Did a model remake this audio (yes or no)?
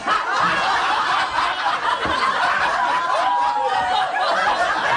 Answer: no